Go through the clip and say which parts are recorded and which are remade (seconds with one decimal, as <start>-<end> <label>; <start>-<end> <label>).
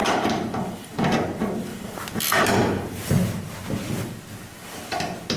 0.0-5.4 recorded